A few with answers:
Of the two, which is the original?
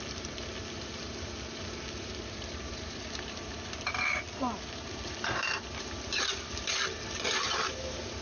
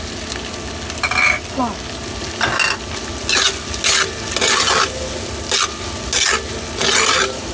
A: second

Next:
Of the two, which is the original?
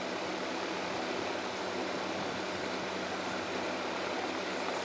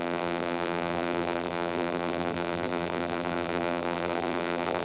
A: first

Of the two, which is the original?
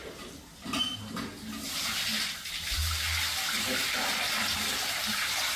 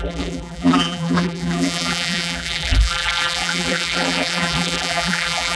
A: first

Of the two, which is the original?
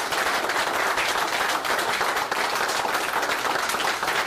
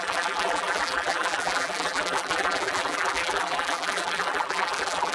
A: first